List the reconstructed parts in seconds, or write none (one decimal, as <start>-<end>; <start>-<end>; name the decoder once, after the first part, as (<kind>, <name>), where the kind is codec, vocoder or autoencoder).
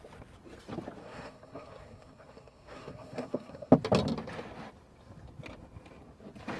1.0-3.7 (codec, SNAC)